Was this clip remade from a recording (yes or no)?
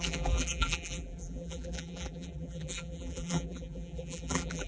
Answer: yes